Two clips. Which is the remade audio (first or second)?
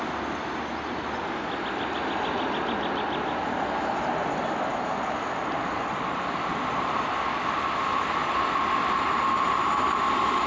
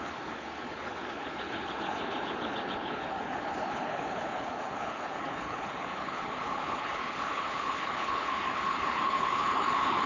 second